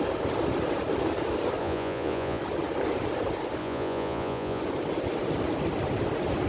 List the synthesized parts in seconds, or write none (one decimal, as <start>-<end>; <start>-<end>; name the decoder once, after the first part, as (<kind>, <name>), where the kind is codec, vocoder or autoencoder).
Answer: 1.6-2.4 (vocoder, Vocos); 3.6-4.6